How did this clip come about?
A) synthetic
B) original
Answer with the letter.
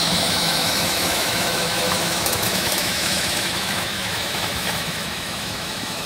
A